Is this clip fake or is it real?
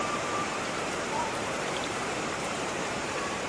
fake